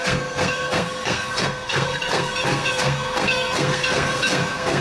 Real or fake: fake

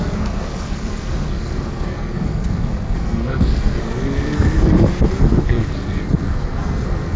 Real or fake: fake